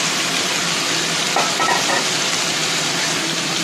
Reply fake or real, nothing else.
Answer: real